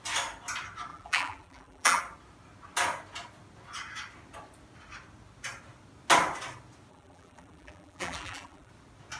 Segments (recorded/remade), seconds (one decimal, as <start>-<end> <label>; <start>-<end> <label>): 0.0-0.9 recorded; 0.9-2.0 remade; 2.0-6.9 recorded; 6.9-8.7 remade; 8.7-9.2 recorded